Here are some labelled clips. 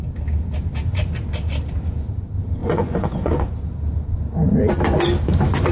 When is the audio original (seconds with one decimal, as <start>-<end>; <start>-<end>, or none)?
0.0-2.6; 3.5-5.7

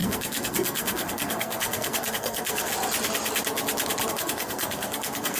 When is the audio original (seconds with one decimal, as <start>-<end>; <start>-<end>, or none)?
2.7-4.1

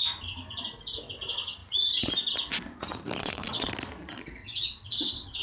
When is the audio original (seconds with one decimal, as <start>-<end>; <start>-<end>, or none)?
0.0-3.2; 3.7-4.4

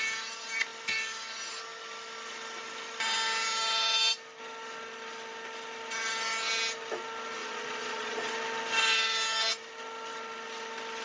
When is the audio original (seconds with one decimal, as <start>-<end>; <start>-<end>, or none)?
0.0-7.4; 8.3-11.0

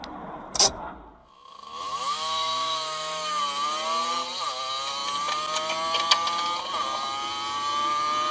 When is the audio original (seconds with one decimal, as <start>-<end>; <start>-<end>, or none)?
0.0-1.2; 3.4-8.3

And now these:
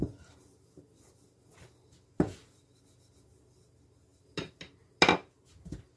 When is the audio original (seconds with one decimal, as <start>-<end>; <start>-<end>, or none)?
0.0-6.0

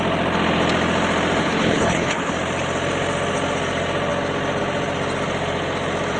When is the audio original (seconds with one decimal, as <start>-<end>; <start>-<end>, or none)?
0.0-1.4; 2.3-6.2